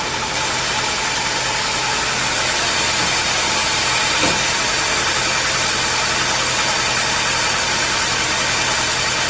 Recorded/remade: recorded